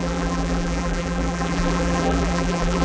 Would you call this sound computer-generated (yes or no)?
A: yes